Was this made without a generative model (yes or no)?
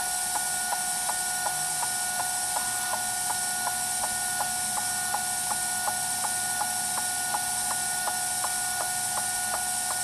yes